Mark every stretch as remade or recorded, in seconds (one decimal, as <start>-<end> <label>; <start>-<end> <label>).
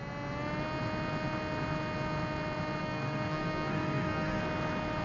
0.0-2.8 recorded; 2.8-4.4 remade; 4.4-5.0 recorded